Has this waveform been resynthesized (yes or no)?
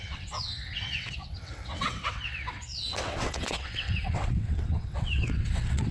yes